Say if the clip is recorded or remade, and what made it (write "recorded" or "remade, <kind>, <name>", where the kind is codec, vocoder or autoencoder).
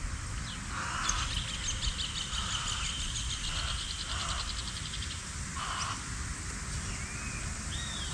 recorded